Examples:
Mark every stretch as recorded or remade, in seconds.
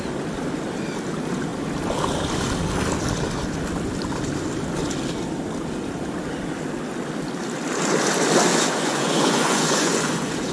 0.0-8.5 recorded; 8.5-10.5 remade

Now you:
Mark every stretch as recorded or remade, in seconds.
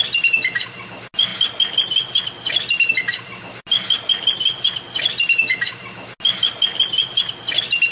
0.0-7.9 recorded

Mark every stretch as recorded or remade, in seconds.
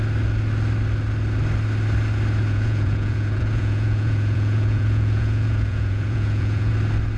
0.0-2.4 recorded; 2.4-6.7 remade; 6.7-7.2 recorded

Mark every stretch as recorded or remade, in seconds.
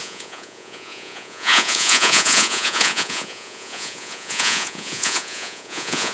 0.0-6.1 remade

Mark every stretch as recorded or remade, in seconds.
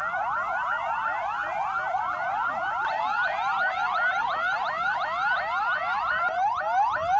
0.0-7.2 recorded